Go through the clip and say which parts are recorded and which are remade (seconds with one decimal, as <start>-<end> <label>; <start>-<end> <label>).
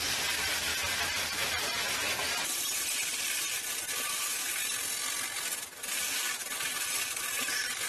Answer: 0.0-4.6 remade; 4.6-5.8 recorded; 5.8-7.9 remade